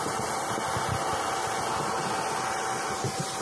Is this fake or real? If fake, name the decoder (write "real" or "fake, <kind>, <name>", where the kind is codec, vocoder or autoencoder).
real